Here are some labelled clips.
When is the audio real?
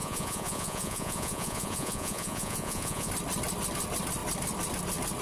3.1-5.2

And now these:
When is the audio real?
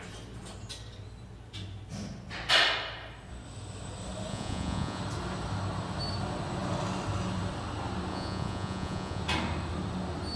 0.0-4.3; 5.0-8.1; 9.2-10.4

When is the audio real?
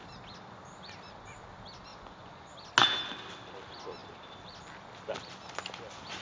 0.0-1.9; 2.5-6.2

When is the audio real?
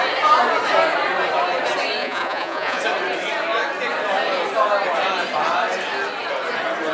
0.0-2.0; 2.8-6.9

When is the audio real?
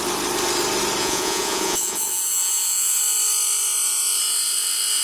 0.0-1.0; 3.0-5.0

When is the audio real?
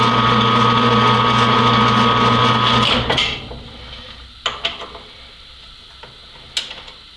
0.0-7.2